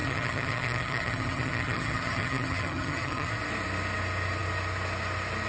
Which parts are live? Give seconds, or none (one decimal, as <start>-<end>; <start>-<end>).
3.3-5.5